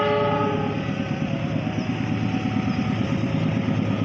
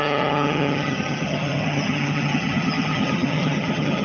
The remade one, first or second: second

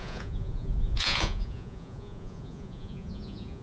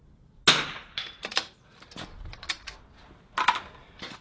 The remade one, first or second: first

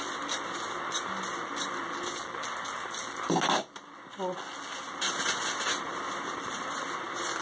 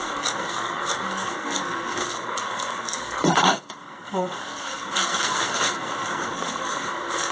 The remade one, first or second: second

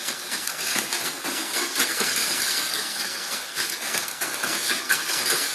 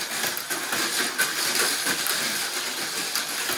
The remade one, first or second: first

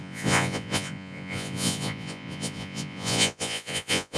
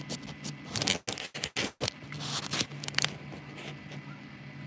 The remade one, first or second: first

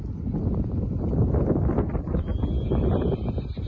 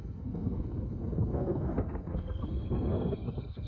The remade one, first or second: second